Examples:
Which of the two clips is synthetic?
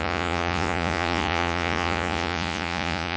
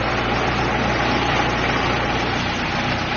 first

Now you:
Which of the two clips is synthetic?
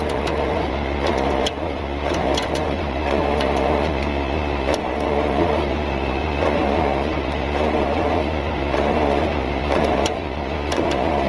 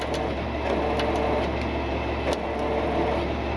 first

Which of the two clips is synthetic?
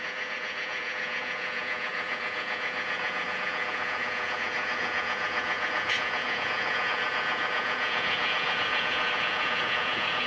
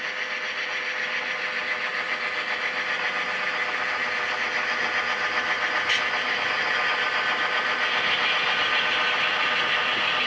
first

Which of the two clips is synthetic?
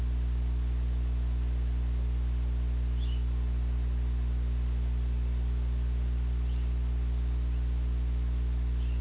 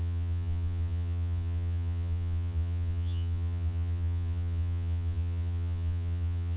second